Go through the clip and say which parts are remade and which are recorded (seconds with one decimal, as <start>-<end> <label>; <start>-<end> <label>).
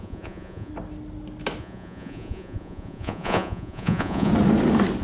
0.0-0.7 remade; 0.7-1.6 recorded; 1.6-4.3 remade; 4.3-5.0 recorded